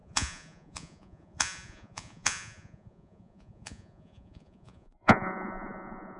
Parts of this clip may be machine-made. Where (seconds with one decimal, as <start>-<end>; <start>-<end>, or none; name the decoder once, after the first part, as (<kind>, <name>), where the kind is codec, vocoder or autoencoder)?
0.0-6.2 (vocoder, Vocos)